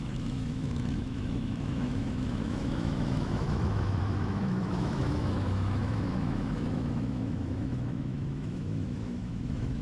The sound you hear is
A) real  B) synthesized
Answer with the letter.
B